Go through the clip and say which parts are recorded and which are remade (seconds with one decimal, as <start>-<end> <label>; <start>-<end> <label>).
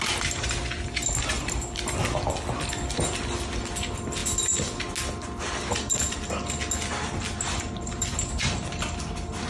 0.0-1.4 recorded; 1.4-2.0 remade; 2.0-9.5 recorded